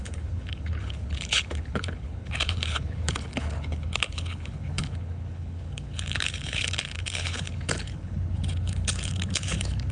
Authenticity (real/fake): fake